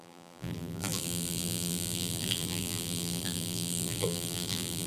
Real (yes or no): no